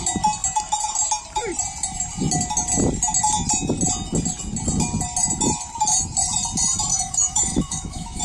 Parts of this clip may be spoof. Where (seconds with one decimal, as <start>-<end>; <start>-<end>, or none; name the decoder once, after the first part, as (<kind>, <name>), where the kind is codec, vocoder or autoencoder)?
6.9-8.2 (autoencoder, DAC-VAE)